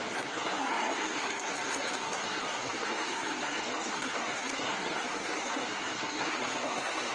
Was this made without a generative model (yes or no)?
no